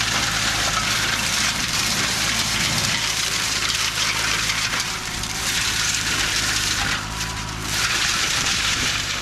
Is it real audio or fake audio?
fake